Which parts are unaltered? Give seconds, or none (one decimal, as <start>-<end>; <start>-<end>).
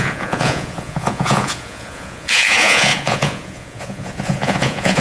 none